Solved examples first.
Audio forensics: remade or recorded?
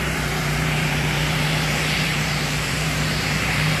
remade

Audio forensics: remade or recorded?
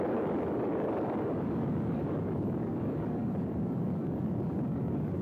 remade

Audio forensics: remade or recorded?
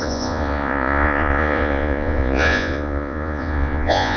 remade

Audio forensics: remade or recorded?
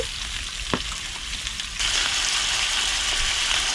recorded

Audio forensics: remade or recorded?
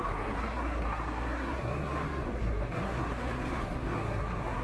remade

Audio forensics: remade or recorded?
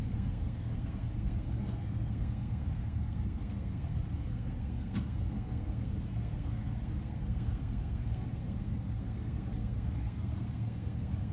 remade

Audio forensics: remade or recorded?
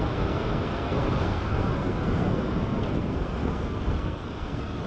remade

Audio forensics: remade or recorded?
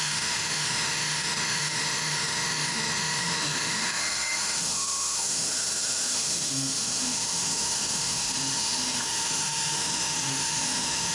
remade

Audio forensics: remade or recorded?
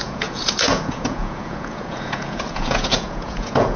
remade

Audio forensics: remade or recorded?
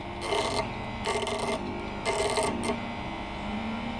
recorded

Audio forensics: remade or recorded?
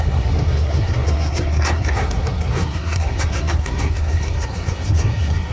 remade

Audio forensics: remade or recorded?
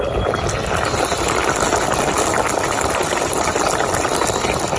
recorded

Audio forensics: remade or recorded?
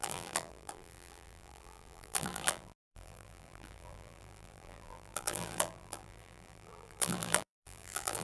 remade